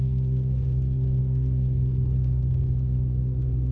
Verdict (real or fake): fake